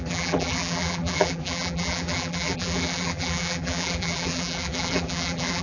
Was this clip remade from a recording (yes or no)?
yes